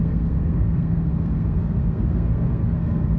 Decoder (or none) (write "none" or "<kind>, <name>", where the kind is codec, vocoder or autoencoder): codec, SNAC